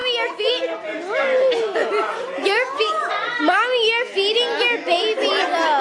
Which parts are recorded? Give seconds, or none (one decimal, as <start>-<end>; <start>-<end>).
0.0-5.8

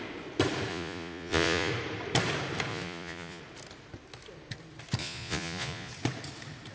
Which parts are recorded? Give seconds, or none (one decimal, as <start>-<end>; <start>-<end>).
0.0-0.7; 1.7-2.7; 3.4-5.0; 5.9-6.7

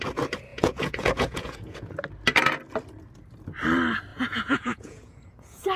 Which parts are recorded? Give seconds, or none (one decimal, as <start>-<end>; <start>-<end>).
0.0-0.5; 1.9-4.1

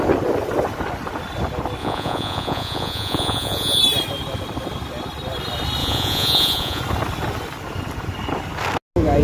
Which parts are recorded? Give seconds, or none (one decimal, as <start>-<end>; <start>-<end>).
0.0-1.8; 3.8-5.8; 6.8-9.2

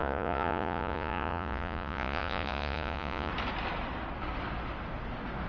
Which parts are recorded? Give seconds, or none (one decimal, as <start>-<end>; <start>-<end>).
3.3-5.5

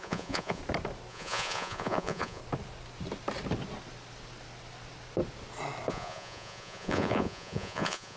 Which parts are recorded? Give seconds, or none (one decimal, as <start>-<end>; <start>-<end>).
0.6-1.1; 2.4-5.9

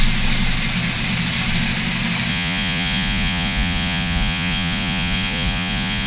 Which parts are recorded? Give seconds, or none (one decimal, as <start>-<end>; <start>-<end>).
0.0-2.3